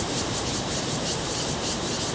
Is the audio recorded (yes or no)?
no